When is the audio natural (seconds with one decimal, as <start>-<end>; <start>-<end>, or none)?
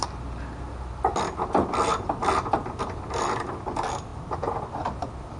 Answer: 0.0-5.4